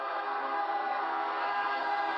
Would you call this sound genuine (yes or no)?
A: no